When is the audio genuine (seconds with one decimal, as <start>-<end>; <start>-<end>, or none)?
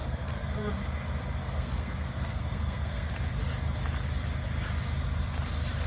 0.7-1.4; 3.1-5.9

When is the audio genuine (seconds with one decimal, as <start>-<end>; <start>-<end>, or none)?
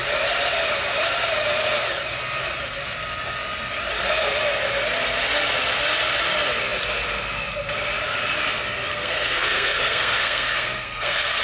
0.0-8.9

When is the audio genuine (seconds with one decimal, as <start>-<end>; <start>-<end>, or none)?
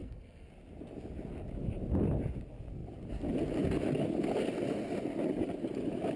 0.5-6.2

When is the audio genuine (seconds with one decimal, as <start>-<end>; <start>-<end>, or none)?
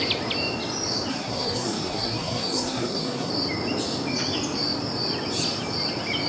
0.0-1.1; 3.3-6.3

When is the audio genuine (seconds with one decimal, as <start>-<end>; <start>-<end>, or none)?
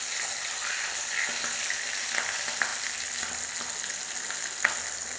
0.0-5.2